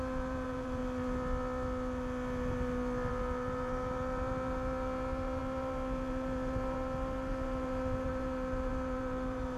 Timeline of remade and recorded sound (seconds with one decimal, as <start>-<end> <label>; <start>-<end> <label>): 0.0-0.8 remade; 0.8-3.1 recorded; 3.1-9.6 remade